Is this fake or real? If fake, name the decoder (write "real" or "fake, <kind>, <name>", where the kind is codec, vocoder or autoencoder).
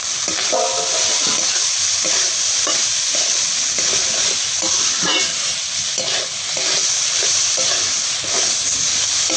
real